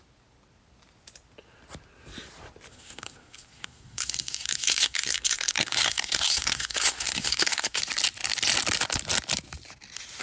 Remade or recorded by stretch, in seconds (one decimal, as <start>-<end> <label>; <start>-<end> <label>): 0.0-2.7 recorded; 2.7-7.8 remade; 7.8-10.2 recorded